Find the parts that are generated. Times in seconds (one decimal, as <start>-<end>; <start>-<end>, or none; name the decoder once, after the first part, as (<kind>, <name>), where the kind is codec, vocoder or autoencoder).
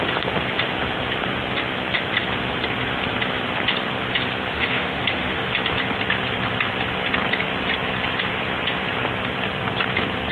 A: 4.5-5.5 (autoencoder, DAC-VAE)